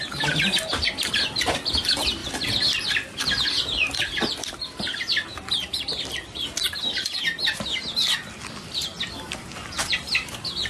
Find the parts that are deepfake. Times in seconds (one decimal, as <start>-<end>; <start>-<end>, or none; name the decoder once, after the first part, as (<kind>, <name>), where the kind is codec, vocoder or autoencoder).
2.2-7.2 (vocoder, BigVGAN v2)